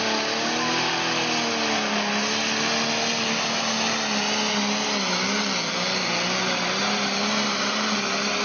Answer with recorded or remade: recorded